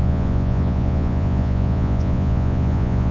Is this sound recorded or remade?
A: remade